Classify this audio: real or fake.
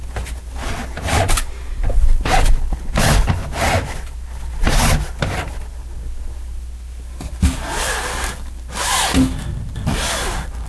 real